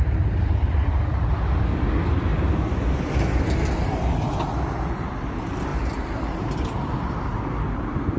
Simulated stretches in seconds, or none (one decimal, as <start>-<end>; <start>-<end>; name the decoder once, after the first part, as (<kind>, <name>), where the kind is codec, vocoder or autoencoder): 5.7-7.0 (vocoder, BigVGAN v2)